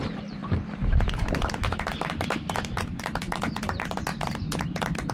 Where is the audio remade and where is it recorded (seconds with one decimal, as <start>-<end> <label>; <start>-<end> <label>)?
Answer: 0.0-5.1 remade